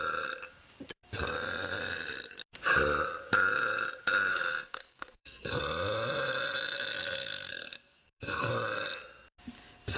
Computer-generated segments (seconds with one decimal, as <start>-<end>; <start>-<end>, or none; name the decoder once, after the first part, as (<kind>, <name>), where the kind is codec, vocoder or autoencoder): 4.3-5.6 (codec, SNAC); 7.5-8.5